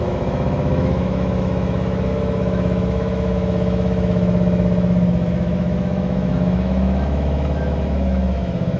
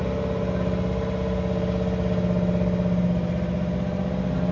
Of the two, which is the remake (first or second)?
first